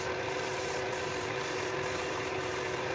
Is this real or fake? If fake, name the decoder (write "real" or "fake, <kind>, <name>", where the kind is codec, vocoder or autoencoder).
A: real